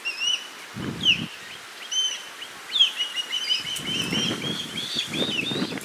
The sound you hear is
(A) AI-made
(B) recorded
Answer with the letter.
B